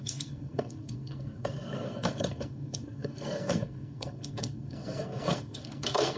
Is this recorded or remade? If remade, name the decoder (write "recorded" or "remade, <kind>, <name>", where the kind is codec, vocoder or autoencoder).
remade, codec, SNAC